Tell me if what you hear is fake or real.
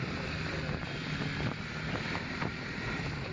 fake